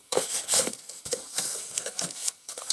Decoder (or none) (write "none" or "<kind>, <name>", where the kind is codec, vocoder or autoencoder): codec, SNAC